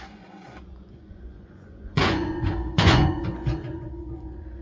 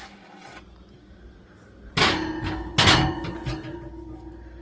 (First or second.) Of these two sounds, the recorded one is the second